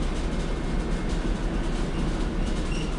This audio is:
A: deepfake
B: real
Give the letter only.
B